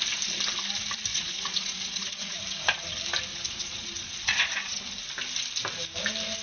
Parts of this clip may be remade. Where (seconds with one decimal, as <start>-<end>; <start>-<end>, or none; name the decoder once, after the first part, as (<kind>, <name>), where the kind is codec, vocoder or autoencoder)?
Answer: 1.1-2.4 (vocoder, Vocos); 3.3-4.8